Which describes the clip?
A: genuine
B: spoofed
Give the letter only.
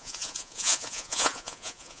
B